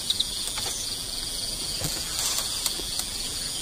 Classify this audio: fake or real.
fake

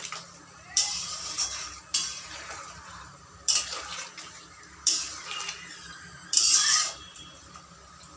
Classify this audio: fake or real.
fake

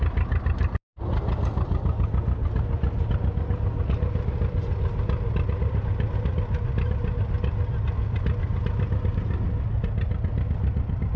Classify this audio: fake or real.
real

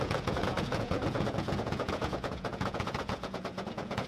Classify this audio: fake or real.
fake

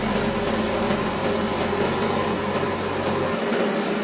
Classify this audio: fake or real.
real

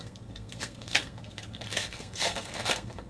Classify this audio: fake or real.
fake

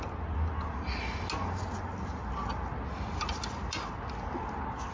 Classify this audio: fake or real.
real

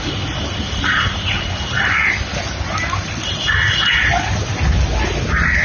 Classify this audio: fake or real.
real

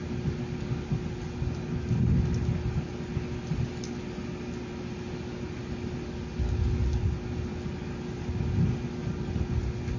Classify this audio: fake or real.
real